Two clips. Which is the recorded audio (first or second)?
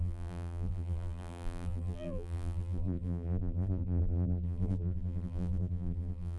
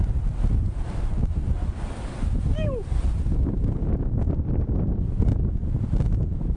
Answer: second